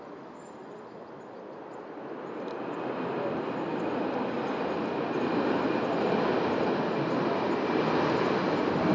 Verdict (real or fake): real